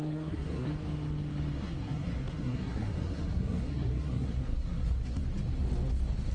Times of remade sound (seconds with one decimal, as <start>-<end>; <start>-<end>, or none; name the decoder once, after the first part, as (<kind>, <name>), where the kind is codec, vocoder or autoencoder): 0.0-0.7 (codec, SNAC); 1.6-5.2